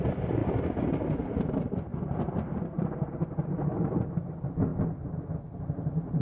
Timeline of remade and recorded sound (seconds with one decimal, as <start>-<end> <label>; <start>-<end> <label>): 0.0-0.4 remade; 0.4-1.4 recorded; 1.4-4.7 remade; 4.7-5.6 recorded; 5.6-6.2 remade